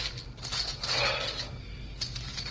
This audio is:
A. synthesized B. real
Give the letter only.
B